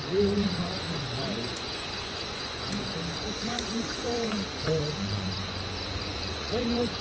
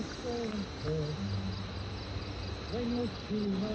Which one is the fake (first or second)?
first